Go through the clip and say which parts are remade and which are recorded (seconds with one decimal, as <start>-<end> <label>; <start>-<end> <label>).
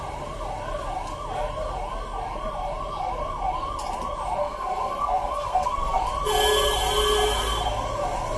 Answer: 0.0-4.4 recorded; 4.4-6.0 remade; 6.0-8.4 recorded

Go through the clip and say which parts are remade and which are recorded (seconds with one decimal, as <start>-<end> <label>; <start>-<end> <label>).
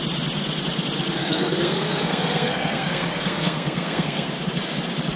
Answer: 0.0-1.2 recorded; 1.2-4.3 remade; 4.3-5.2 recorded